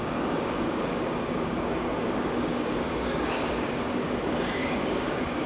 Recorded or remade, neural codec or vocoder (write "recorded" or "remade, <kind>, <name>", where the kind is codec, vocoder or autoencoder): remade, codec, DAC